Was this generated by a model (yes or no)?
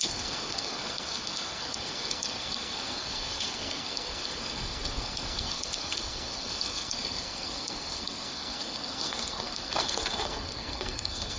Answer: yes